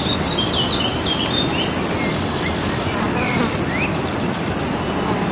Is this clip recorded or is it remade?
recorded